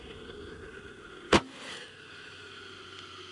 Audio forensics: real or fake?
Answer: real